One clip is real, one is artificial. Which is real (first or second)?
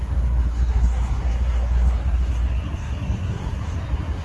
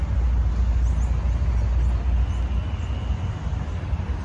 second